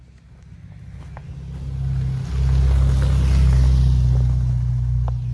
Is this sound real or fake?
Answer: real